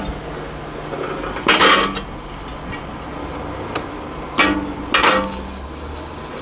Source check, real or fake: real